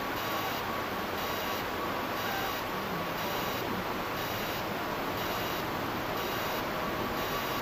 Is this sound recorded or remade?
recorded